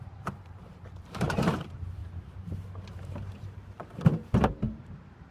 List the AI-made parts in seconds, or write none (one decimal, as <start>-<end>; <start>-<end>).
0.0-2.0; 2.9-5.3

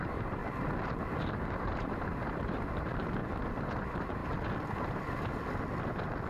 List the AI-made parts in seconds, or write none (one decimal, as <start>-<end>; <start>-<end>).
0.0-0.4; 1.6-3.2; 3.8-4.2

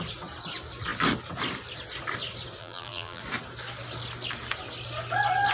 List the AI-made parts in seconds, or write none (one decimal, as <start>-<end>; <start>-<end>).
2.6-3.2

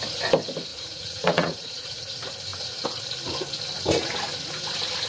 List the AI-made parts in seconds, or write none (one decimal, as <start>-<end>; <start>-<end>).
0.7-2.0